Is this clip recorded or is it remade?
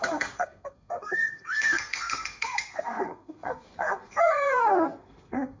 remade